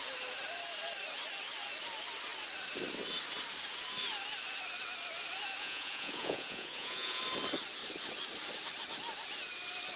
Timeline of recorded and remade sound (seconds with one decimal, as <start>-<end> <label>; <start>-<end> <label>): 0.0-5.6 recorded; 5.6-7.2 remade; 7.2-10.0 recorded